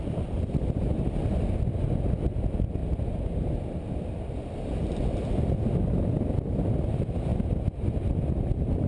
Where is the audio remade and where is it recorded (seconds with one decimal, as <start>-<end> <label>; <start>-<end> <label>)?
0.0-2.8 remade; 2.8-6.5 recorded; 6.5-7.3 remade; 7.3-8.3 recorded; 8.3-8.9 remade